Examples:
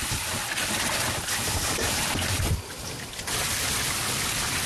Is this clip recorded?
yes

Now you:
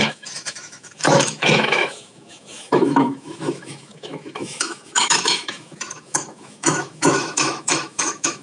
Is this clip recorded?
no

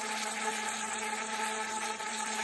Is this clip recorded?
yes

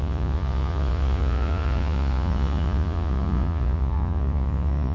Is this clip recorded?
no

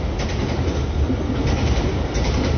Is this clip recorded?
yes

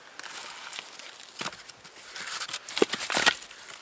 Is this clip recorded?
yes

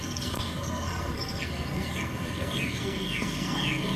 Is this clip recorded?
no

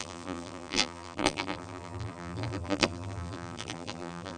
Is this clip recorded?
no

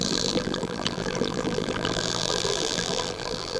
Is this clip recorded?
no